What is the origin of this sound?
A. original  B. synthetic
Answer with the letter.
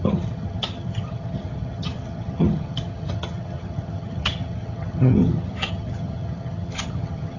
B